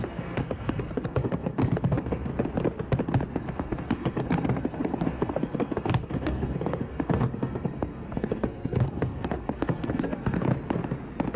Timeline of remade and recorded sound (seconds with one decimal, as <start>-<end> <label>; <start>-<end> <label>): 0.0-2.3 remade; 2.3-3.3 recorded; 3.3-10.4 remade; 10.4-11.4 recorded